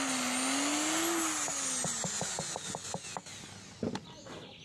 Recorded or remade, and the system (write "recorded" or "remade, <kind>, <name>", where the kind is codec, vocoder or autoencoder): recorded